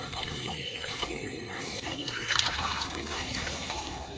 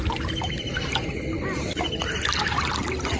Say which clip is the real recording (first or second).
second